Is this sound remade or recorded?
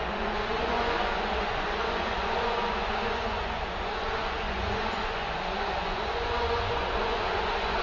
remade